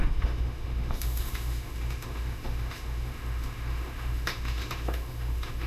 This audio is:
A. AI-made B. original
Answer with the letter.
A